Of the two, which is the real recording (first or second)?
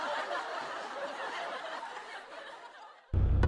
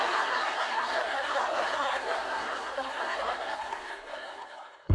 first